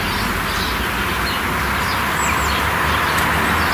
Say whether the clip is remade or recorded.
recorded